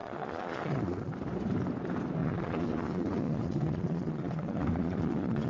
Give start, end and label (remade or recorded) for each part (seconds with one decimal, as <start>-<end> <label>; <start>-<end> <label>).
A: 0.0-1.1 remade; 1.1-2.2 recorded; 2.2-5.5 remade